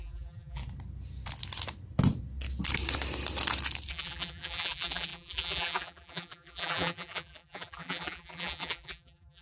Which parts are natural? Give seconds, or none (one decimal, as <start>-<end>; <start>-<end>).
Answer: 0.6-3.9